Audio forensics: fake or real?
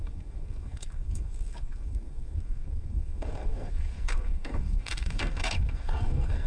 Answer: fake